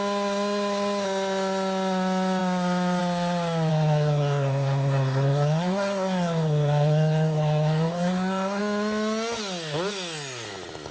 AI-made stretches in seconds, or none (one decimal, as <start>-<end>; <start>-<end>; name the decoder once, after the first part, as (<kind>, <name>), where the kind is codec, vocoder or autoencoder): 3.7-8.6 (codec, SNAC)